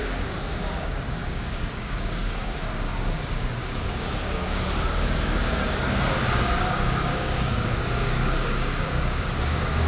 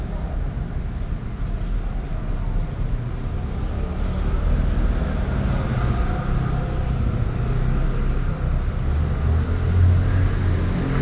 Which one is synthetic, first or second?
first